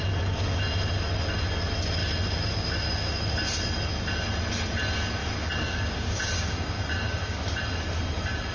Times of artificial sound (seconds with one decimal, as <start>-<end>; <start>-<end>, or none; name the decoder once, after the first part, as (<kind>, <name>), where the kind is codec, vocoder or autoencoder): 5.2-7.4 (codec, DAC)